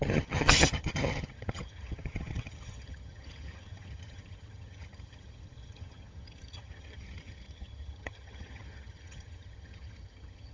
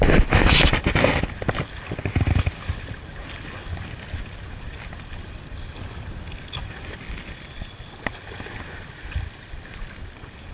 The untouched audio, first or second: second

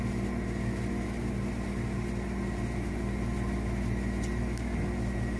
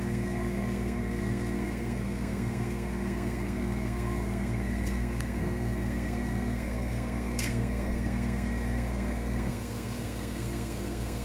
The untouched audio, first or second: first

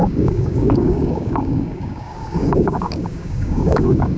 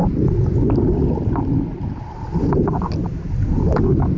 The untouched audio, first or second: second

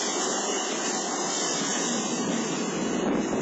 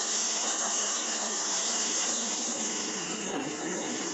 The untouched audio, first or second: first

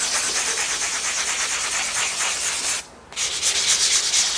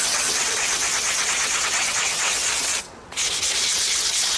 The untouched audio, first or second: first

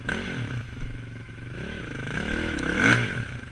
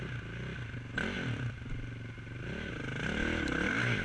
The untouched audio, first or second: second